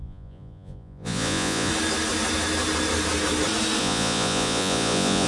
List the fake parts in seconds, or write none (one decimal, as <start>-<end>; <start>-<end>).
0.0-1.7; 3.8-5.3